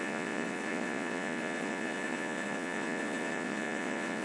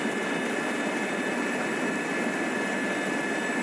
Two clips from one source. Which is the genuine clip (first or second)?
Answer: second